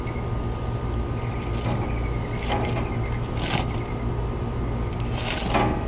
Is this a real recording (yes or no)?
yes